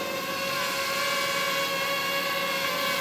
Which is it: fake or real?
real